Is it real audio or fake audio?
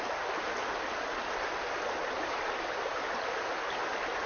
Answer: real